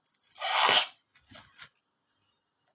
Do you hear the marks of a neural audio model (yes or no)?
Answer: no